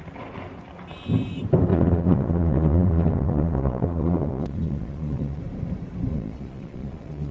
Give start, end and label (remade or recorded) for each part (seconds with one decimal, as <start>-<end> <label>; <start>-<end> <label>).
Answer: 0.0-1.7 recorded; 1.7-5.4 remade; 5.4-6.1 recorded; 6.1-7.3 remade